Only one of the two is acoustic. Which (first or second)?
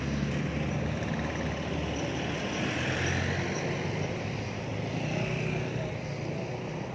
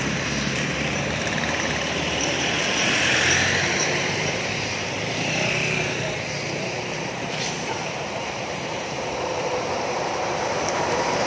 first